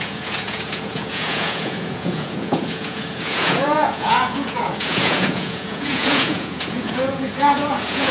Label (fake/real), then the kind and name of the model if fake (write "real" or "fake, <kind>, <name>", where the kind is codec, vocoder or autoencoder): fake, vocoder, Vocos